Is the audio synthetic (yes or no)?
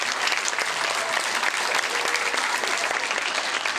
no